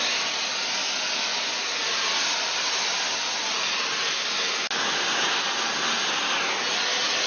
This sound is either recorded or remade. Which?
recorded